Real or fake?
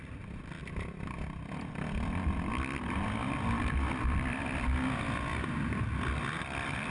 real